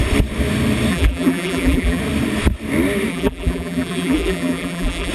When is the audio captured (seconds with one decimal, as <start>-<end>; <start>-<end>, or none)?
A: 0.0-0.9; 2.0-3.1